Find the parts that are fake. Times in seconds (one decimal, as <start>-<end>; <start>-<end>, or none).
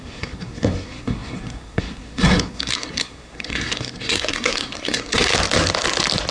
0.0-5.3